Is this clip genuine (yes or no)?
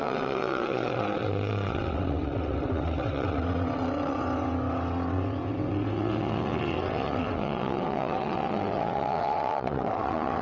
no